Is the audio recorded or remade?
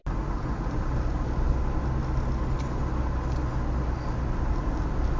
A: recorded